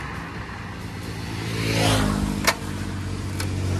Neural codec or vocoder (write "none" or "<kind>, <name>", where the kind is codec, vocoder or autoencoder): none